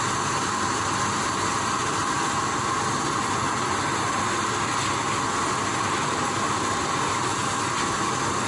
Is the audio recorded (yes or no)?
yes